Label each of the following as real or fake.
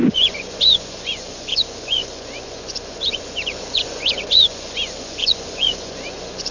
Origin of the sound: fake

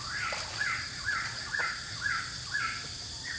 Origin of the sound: real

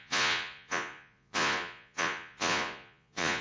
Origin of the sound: fake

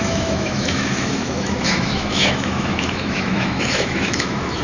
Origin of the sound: fake